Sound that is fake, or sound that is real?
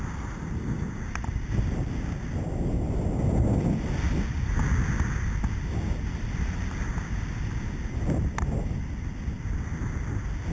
real